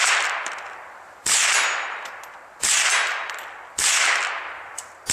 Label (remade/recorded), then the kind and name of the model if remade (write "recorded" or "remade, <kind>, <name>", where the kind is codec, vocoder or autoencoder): recorded